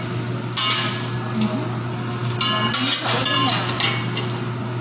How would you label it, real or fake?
real